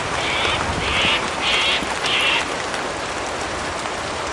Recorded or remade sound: recorded